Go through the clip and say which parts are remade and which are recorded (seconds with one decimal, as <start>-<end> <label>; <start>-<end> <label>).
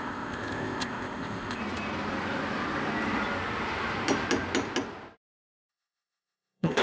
0.0-1.6 remade; 1.6-5.7 recorded; 5.7-6.8 remade